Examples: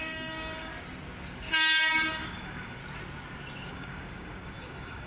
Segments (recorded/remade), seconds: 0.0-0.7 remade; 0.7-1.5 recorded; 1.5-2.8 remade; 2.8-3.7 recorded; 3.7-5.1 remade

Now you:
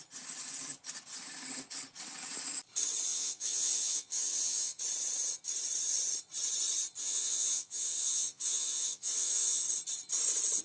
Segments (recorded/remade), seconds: 0.0-3.1 recorded; 3.1-4.8 remade; 4.8-7.0 recorded; 7.0-9.6 remade; 9.6-10.6 recorded

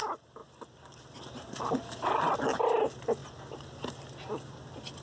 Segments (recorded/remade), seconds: 0.0-5.0 recorded

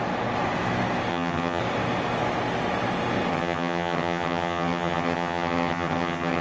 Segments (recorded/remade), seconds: 0.0-1.1 recorded; 1.1-1.6 remade; 1.6-3.3 recorded; 3.3-6.4 remade

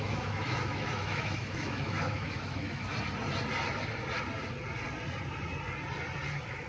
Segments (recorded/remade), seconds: 0.0-2.9 remade; 2.9-6.3 recorded; 6.3-6.7 remade

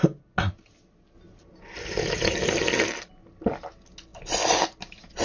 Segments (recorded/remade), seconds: 0.0-5.2 recorded

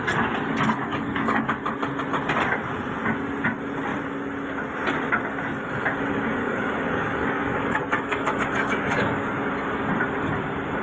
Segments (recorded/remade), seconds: 0.0-0.9 recorded; 0.9-1.6 remade; 1.6-6.1 recorded; 6.1-9.5 remade; 9.5-10.8 recorded